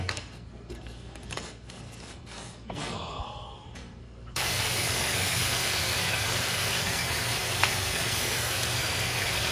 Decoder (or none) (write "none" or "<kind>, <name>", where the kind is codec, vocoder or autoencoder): codec, SNAC